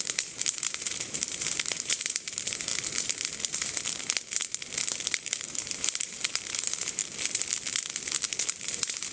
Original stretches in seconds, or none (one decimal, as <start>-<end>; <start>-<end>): 2.7-5.2; 7.0-8.5